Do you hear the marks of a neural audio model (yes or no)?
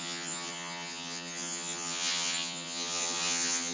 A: yes